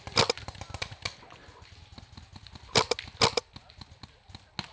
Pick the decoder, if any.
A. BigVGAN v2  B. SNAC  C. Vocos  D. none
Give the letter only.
D